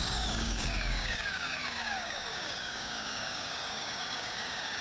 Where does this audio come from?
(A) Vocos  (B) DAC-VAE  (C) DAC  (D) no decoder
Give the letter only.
C